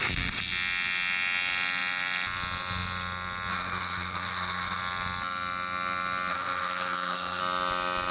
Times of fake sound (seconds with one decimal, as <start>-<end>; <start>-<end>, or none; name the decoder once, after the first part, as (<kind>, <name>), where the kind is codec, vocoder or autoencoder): 3.5-4.8 (codec, SNAC); 6.3-7.4